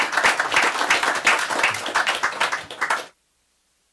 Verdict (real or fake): real